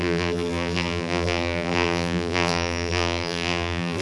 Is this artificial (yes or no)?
yes